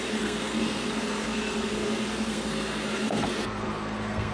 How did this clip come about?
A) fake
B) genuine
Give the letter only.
A